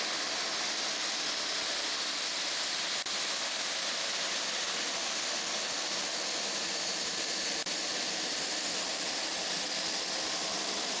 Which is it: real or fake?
real